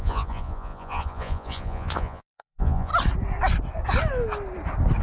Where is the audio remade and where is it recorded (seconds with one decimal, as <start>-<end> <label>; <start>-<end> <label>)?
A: 0.0-2.9 remade; 2.9-5.0 recorded